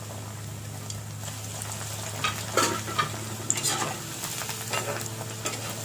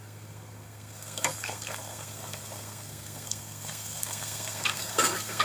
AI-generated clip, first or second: second